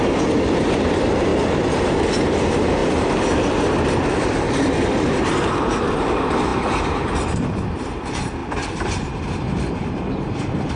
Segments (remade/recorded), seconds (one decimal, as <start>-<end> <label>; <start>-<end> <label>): 0.0-1.3 remade; 1.3-1.8 recorded; 1.8-10.8 remade